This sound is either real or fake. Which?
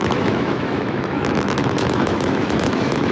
fake